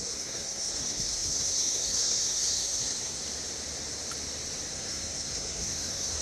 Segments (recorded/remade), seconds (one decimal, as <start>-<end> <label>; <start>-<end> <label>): 0.0-3.2 remade; 3.2-4.7 recorded; 4.7-6.2 remade